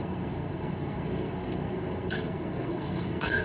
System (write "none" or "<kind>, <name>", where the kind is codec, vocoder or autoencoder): codec, SNAC